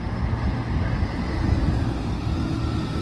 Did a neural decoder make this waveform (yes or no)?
no